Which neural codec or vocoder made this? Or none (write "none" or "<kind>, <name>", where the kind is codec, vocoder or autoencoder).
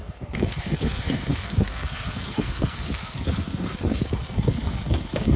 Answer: codec, SNAC